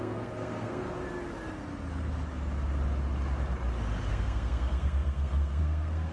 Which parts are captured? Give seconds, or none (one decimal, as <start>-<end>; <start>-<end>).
0.8-4.1